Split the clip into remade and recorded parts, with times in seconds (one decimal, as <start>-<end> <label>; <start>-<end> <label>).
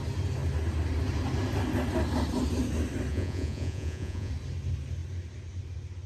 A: 0.0-3.1 recorded; 3.1-4.3 remade; 4.3-6.1 recorded